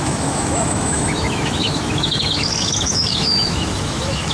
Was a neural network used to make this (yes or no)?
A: yes